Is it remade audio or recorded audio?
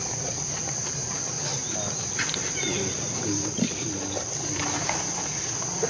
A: recorded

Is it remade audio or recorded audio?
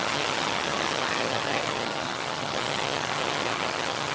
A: remade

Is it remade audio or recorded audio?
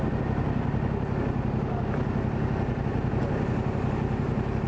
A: recorded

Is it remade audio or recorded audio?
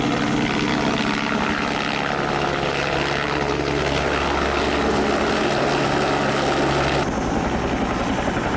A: recorded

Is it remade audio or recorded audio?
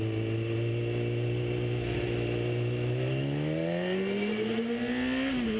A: recorded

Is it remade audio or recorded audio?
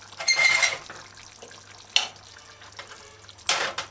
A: recorded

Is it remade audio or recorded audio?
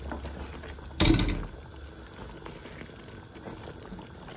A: recorded